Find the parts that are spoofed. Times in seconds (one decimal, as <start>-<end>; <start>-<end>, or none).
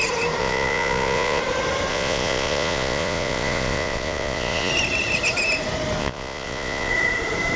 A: 0.4-1.4; 1.9-4.7; 6.0-6.9